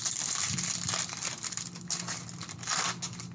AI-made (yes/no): no